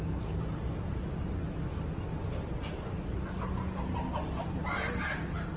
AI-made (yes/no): no